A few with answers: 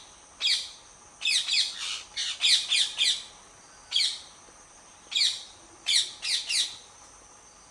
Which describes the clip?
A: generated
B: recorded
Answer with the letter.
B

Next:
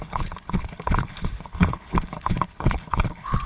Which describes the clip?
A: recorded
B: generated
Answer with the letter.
B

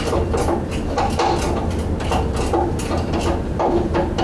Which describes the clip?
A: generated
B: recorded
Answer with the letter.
B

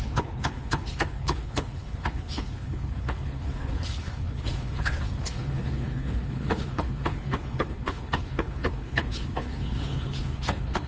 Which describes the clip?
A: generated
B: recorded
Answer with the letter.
A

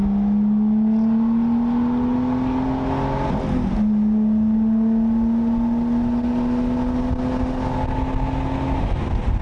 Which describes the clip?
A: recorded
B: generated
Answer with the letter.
A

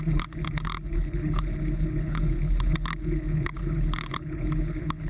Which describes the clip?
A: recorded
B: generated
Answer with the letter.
B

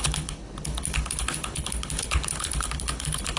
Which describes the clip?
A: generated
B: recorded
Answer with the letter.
A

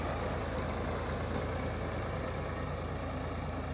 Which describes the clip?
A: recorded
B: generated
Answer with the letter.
A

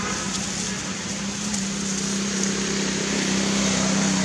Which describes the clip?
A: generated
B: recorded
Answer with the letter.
B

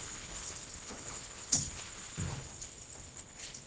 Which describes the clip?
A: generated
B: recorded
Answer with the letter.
A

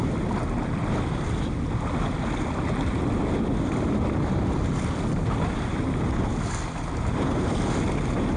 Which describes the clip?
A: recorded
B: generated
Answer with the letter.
A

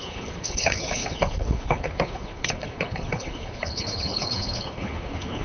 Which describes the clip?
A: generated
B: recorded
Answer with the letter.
A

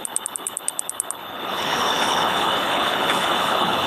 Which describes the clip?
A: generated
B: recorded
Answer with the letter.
A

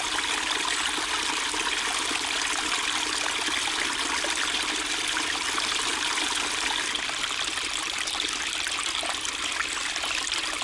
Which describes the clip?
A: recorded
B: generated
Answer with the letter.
A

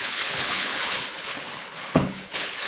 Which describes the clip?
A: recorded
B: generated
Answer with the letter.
B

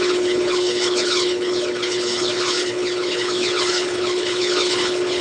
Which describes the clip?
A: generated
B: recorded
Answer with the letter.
A